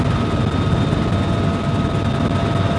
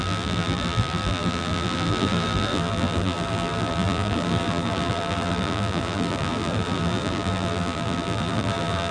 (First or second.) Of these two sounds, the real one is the first